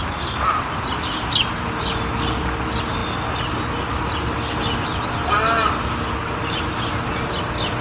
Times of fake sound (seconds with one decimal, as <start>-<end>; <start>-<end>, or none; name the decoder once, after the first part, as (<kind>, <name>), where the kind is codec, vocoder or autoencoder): none